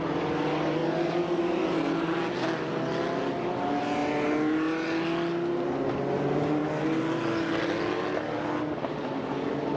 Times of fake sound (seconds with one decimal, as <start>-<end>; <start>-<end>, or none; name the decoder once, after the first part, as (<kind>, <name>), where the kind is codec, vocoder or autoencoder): none